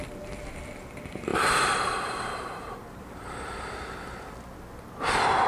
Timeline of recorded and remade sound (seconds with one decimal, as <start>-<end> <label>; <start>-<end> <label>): 0.0-1.3 recorded; 1.3-4.3 remade; 4.3-5.5 recorded